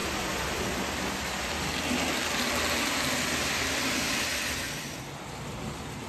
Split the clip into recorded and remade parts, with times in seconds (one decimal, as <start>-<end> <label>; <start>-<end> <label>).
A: 0.0-6.1 recorded